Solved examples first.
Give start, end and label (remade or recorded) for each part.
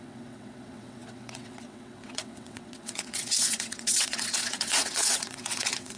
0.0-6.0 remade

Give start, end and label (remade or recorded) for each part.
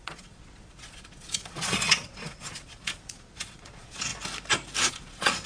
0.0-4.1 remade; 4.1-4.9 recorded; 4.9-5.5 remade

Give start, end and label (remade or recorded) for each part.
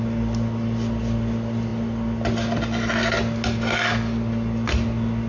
0.0-5.3 recorded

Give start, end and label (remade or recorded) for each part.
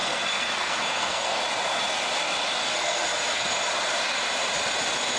0.0-1.4 remade; 1.4-2.6 recorded; 2.6-3.4 remade; 3.4-5.2 recorded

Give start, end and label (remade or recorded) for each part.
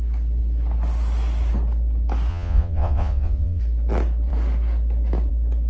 0.0-2.3 recorded; 2.3-3.6 remade; 3.6-5.7 recorded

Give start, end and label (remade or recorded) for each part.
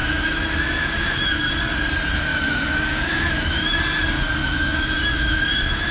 0.0-1.5 remade; 1.5-2.3 recorded; 2.3-3.8 remade; 3.8-4.4 recorded; 4.4-5.9 remade